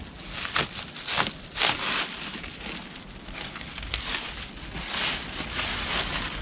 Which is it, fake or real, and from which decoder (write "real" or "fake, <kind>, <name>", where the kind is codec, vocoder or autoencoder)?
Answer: real